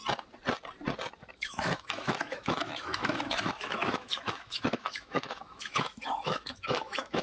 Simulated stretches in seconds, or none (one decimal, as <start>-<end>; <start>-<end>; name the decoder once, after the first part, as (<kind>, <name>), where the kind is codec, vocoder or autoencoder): 1.3-7.2 (autoencoder, DAC-VAE)